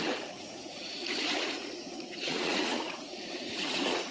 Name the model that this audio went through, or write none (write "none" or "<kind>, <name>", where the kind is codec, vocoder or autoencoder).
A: vocoder, Vocos